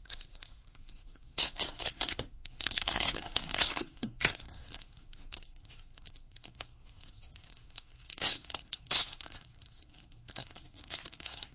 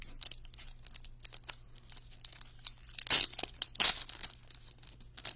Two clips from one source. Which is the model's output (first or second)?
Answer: first